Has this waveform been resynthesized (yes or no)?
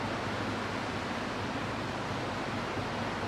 no